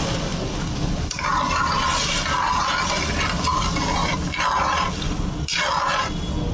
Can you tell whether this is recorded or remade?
recorded